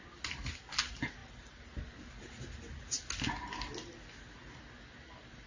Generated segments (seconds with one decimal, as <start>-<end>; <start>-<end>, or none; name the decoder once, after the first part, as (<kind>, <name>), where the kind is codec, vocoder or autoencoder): none